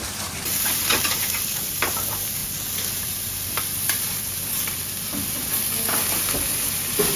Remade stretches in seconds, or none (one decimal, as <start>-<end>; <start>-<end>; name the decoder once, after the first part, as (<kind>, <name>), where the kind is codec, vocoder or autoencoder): 0.0-2.4 (vocoder, BigVGAN v2); 3.0-7.2